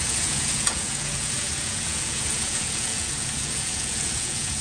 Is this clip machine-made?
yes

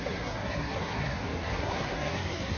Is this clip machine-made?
yes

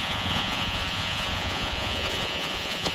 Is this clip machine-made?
yes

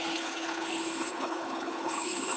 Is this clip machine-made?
yes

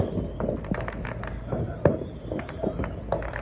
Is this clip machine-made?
no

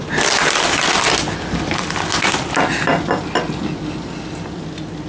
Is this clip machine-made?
no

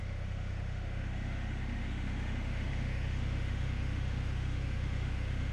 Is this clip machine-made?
yes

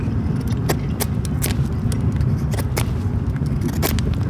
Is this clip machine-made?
no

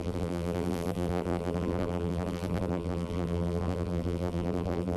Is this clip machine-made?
yes